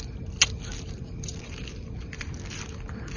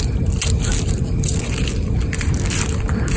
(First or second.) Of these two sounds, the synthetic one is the second